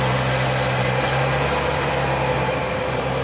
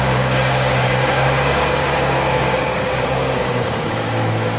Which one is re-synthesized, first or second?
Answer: second